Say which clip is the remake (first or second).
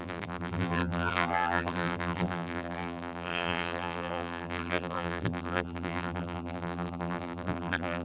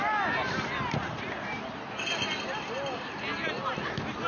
first